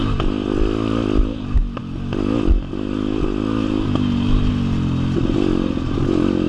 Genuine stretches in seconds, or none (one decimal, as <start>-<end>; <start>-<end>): 0.0-6.5